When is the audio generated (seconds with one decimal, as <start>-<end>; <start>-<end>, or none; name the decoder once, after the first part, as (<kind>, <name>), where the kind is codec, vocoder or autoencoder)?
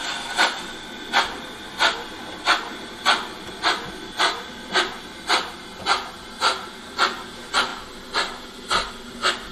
none